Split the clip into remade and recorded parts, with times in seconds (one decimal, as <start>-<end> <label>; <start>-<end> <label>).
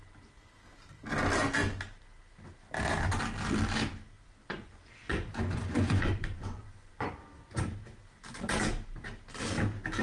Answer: 0.0-4.4 recorded; 4.4-7.1 remade; 7.1-10.0 recorded